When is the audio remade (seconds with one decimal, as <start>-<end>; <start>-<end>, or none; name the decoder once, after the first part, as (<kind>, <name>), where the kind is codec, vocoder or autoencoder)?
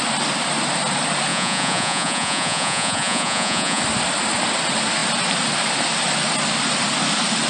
1.3-3.8 (vocoder, Vocos)